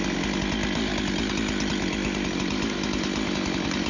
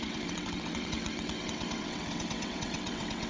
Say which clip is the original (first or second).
first